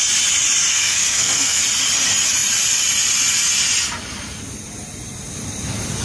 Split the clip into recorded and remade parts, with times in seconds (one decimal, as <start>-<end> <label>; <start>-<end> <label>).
0.0-0.7 recorded; 0.7-1.6 remade; 1.6-6.0 recorded